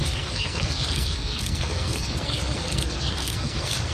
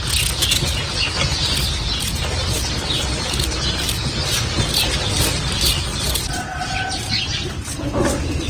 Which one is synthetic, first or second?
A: first